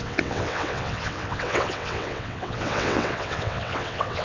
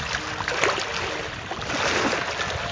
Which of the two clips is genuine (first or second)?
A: second